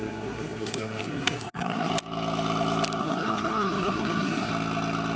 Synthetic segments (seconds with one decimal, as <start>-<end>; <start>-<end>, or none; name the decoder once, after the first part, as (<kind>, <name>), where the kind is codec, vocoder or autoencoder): 0.0-1.9 (codec, SNAC); 3.0-4.5